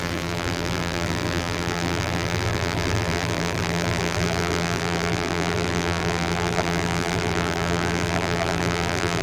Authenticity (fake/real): fake